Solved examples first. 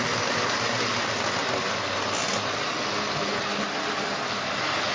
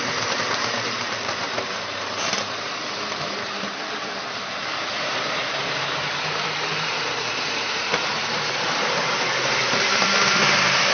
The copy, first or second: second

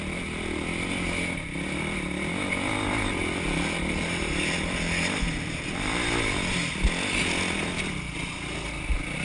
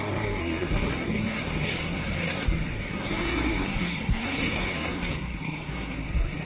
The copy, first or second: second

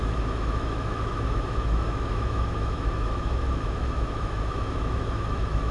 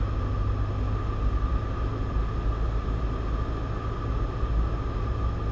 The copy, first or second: first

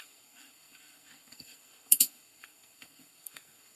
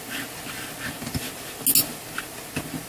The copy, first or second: first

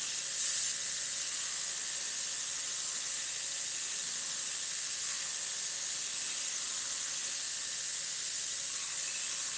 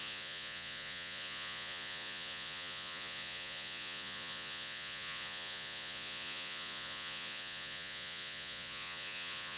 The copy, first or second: second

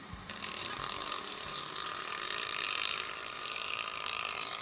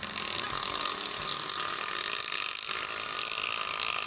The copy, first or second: first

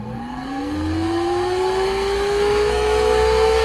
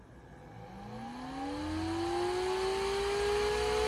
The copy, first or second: first